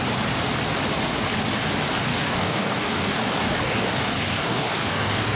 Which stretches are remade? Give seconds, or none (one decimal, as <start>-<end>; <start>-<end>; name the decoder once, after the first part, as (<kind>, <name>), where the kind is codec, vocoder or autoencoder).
2.1-5.4 (codec, DAC)